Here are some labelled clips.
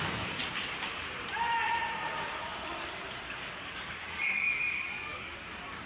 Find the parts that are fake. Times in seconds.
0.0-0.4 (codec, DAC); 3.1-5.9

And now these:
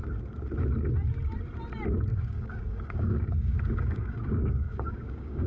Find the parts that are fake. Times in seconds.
2.1-5.5 (codec, DAC)

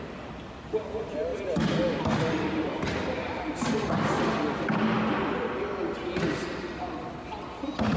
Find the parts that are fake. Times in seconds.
none